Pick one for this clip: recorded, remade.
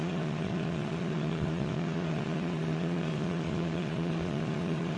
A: remade